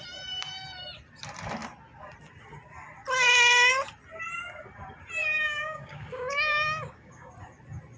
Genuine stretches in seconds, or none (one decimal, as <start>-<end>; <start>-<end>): 0.0-5.2; 7.3-8.0